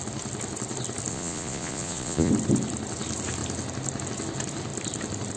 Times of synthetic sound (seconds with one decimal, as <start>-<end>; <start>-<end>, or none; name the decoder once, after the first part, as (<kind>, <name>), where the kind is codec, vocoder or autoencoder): 1.1-2.3 (vocoder, Vocos)

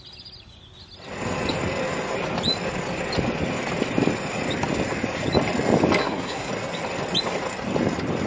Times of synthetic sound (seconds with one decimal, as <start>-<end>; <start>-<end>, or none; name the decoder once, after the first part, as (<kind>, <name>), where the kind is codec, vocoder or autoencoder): 6.0-6.5 (codec, SNAC)

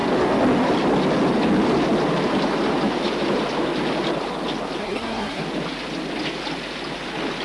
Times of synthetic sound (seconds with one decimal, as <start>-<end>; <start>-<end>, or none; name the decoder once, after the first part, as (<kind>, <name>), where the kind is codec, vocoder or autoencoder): 4.8-5.4 (codec, SNAC)

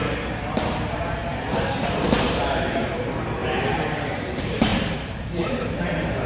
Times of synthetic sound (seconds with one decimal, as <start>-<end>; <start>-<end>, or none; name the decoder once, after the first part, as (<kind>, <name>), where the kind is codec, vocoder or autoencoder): 0.5-3.4 (vocoder, BigVGAN v2); 4.0-6.3

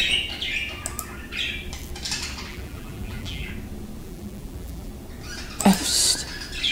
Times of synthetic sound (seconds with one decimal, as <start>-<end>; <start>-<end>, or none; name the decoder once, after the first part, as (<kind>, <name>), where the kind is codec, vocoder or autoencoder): 2.5-3.5 (vocoder, BigVGAN v2); 4.0-4.9

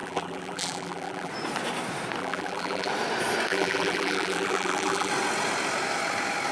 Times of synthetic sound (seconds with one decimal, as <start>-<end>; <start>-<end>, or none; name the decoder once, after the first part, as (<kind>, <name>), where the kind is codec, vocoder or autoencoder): 0.0-1.3 (vocoder, BigVGAN v2); 2.2-2.9; 3.5-5.1